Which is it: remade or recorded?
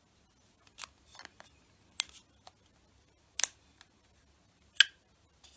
recorded